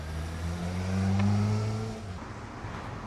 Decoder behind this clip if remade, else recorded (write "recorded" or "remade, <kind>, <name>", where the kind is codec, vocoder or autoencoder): recorded